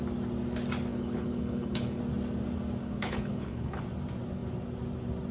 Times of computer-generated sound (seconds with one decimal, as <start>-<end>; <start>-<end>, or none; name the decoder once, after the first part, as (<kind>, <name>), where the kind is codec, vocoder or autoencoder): 0.9-2.0 (codec, HILCodec); 2.8-3.8